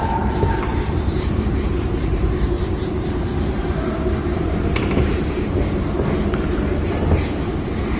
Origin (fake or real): fake